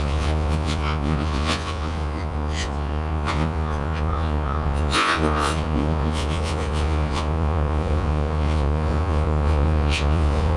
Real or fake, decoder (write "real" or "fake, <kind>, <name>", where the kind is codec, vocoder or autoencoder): fake, vocoder, Vocos